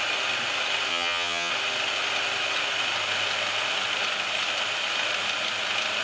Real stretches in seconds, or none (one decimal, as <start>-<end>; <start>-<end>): 0.0-0.9; 1.5-6.0